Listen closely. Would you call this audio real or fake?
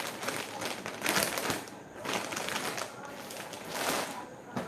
real